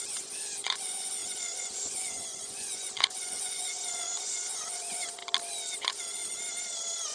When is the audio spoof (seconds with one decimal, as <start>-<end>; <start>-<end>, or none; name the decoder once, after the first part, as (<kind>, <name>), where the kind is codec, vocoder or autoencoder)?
0.0-5.2 (vocoder, Vocos); 5.8-6.2